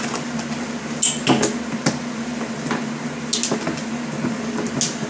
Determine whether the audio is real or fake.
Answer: real